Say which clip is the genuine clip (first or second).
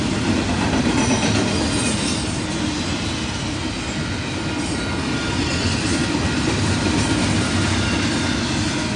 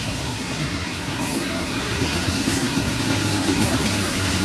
first